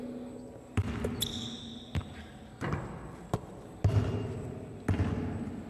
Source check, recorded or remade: recorded